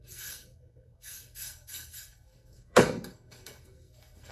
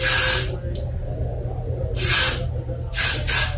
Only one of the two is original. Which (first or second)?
second